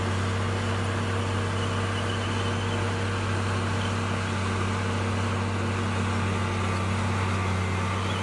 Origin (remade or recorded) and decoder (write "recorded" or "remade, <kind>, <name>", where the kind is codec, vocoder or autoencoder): recorded